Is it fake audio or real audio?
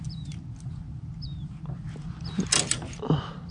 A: real